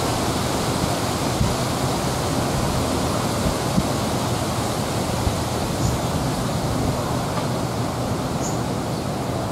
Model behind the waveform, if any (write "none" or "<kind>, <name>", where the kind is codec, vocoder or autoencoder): none